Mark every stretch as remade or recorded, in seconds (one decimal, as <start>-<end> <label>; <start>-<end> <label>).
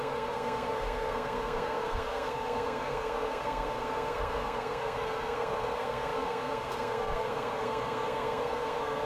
0.0-9.1 remade